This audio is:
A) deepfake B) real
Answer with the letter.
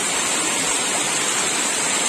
B